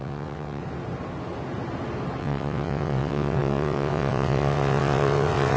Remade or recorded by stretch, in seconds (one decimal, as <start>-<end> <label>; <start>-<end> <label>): 0.0-0.6 remade; 0.6-2.2 recorded; 2.2-5.6 remade

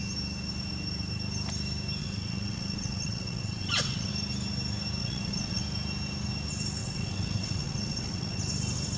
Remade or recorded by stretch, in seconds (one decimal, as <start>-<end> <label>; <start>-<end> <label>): 0.0-2.0 recorded; 2.0-4.1 remade; 4.1-5.0 recorded; 5.0-5.6 remade; 5.6-6.8 recorded; 6.8-8.4 remade; 8.4-9.0 recorded

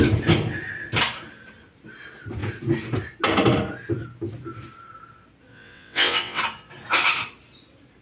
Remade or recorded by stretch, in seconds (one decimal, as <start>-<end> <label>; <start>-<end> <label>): 0.0-5.5 recorded; 5.5-6.4 remade; 6.4-8.0 recorded

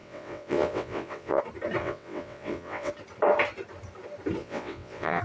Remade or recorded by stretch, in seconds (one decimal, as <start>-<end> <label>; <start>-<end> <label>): 0.0-1.4 remade; 1.4-1.8 recorded; 1.8-2.9 remade; 2.9-4.4 recorded; 4.4-5.2 remade

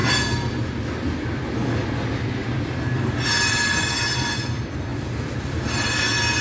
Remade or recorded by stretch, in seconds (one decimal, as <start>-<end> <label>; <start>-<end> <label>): 0.0-6.4 recorded

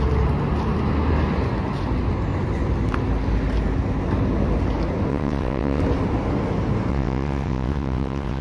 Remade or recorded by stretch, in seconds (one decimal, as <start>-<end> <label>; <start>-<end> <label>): 0.0-5.1 recorded; 5.1-5.8 remade; 5.8-6.9 recorded; 6.9-8.4 remade

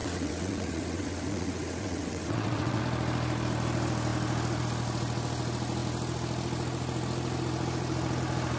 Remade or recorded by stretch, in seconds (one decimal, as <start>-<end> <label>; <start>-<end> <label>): 0.0-2.8 remade; 2.8-8.6 recorded